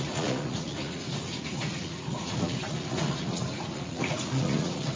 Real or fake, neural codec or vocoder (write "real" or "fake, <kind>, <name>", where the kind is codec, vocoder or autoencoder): fake, vocoder, Vocos